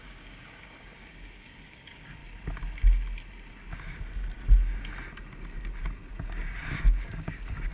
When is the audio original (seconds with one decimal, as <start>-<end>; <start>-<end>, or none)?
2.2-6.8